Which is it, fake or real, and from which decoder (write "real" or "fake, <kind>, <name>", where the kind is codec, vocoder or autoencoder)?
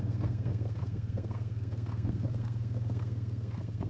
fake, codec, SNAC